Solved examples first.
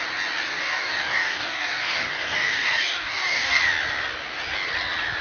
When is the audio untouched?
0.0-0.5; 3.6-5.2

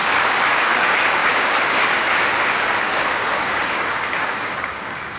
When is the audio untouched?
none

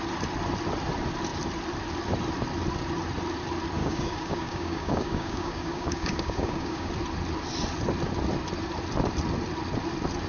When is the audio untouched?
0.0-3.8; 6.9-10.3

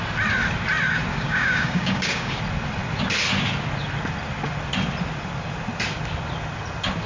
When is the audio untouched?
0.0-1.1; 2.4-7.1

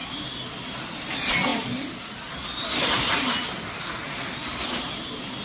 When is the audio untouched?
0.0-5.4

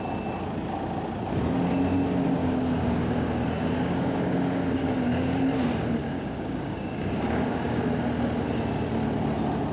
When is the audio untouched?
0.0-2.4; 5.4-6.0; 7.8-9.7